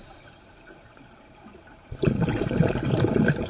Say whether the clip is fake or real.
fake